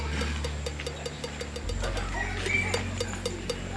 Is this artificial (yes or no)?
no